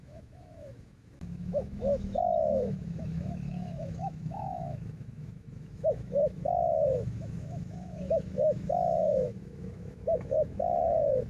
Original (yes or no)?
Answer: no